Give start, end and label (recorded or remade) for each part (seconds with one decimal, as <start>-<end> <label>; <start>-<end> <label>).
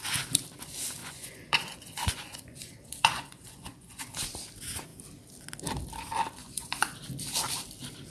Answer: 0.0-1.0 recorded; 1.0-4.0 remade; 4.0-6.4 recorded; 6.4-6.9 remade; 6.9-8.1 recorded